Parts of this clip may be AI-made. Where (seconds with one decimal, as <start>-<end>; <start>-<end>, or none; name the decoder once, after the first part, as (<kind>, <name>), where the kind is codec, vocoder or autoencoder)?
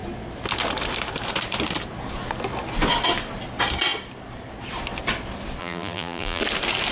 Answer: 5.6-6.4 (vocoder, BigVGAN v2)